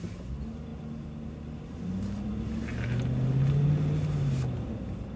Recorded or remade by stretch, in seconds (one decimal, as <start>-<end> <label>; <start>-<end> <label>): 0.0-5.2 recorded